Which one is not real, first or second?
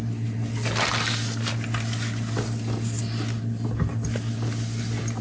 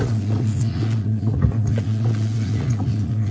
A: second